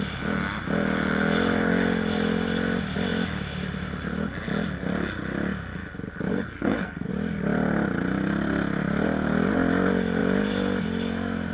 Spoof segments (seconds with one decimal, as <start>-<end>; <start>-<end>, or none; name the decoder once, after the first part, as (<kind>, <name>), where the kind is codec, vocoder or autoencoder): 6.3-7.1 (codec, SNAC)